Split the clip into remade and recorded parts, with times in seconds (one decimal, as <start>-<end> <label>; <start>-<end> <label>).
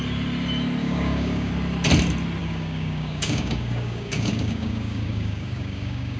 0.0-0.8 recorded; 0.8-1.5 remade; 1.5-2.4 recorded; 2.4-6.2 remade